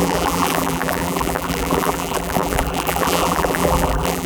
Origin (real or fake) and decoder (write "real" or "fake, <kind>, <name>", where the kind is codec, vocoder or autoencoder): fake, vocoder, BigVGAN v2